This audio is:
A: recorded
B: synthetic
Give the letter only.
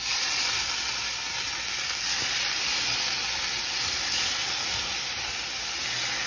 A